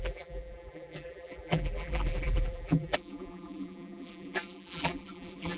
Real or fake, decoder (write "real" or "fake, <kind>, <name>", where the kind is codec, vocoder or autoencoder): fake, vocoder, BigVGAN v2